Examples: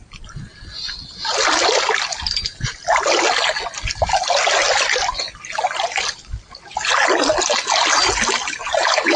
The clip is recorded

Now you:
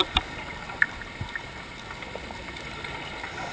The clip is recorded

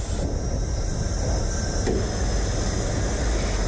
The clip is recorded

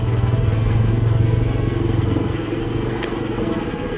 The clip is remade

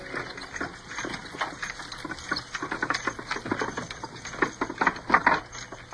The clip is recorded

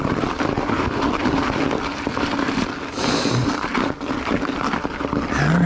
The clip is recorded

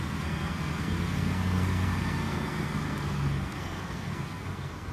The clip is remade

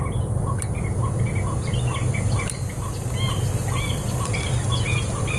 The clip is recorded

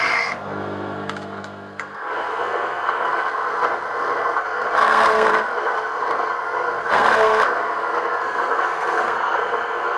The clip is remade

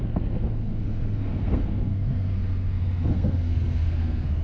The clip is remade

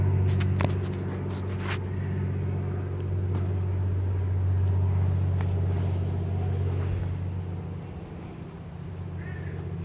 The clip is recorded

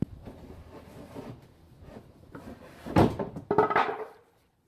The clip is recorded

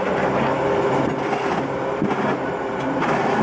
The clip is recorded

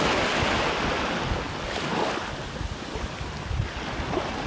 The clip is recorded